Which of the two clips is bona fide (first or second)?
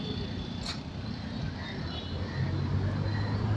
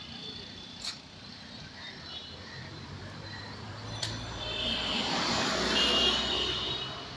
first